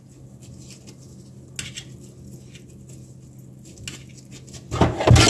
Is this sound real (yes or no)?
yes